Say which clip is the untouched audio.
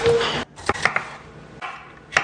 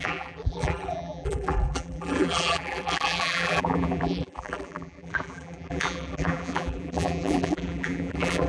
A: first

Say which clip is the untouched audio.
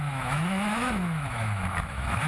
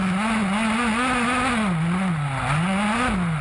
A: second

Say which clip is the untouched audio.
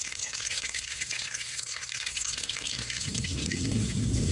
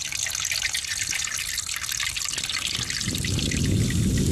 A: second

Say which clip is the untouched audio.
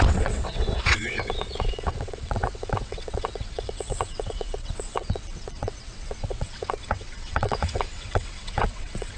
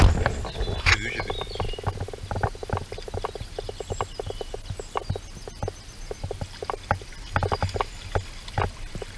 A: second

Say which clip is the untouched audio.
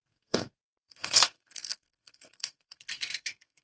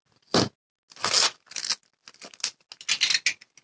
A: second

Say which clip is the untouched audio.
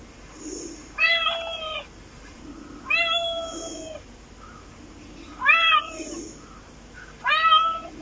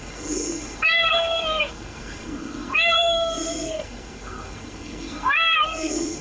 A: first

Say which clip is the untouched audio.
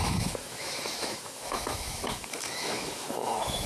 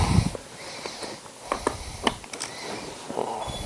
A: second